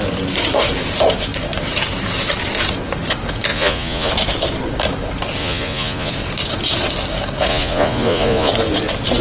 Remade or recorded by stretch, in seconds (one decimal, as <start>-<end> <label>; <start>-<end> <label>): 0.0-3.5 recorded; 3.5-4.1 remade; 4.1-5.4 recorded; 5.4-6.1 remade; 6.1-7.5 recorded; 7.5-8.5 remade; 8.5-9.2 recorded